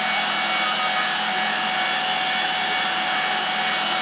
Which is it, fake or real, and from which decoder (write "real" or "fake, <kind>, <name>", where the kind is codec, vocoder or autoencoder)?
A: real